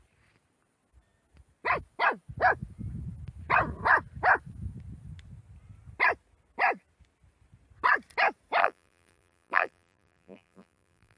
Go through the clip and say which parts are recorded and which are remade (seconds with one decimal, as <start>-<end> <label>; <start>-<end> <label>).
0.0-8.6 recorded; 8.6-11.2 remade